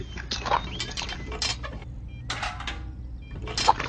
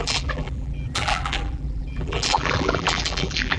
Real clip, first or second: first